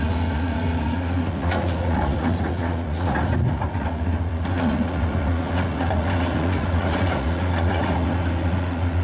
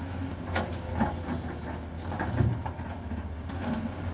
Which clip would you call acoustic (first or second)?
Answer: second